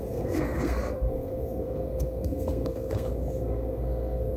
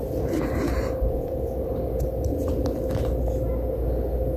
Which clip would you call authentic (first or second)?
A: second